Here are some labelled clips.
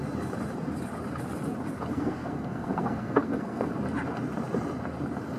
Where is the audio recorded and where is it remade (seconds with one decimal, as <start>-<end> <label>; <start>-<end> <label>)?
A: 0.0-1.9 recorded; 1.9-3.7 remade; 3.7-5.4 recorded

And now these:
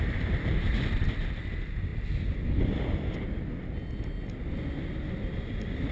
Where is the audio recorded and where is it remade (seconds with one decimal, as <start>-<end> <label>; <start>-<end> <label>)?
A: 0.0-5.9 recorded

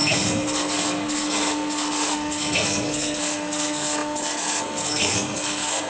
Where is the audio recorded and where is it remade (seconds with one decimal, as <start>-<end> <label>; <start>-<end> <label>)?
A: 0.0-5.9 remade